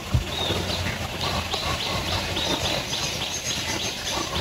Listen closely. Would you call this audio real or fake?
real